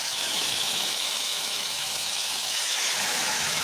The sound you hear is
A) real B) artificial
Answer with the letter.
B